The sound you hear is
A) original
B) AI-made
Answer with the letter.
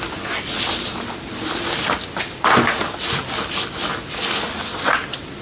A